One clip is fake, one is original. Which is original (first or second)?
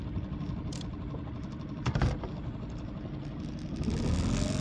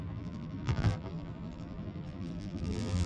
first